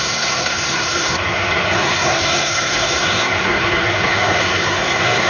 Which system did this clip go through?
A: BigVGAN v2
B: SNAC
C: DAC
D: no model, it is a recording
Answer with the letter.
B